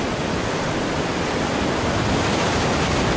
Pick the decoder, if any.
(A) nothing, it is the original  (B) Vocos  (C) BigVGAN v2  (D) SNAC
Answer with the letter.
A